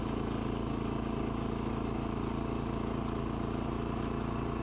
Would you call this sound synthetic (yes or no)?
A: no